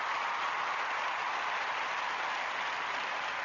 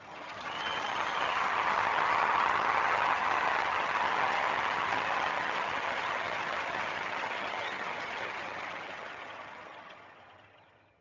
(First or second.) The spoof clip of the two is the second